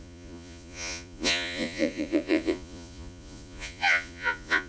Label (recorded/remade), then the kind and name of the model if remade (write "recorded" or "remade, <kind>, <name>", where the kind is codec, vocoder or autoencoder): remade, vocoder, Vocos